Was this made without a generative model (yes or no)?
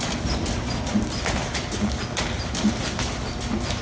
yes